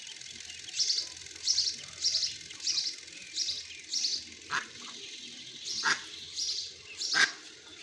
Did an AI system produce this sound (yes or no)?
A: no